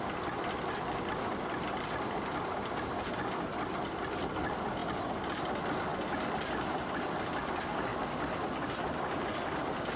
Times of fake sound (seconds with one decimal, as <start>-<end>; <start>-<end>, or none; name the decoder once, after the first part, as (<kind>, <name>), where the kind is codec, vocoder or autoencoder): none